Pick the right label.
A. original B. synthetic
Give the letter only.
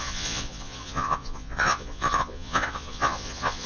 B